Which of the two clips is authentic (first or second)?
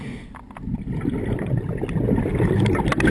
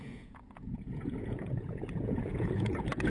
first